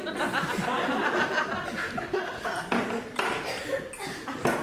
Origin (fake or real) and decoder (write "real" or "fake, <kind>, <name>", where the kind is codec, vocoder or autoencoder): real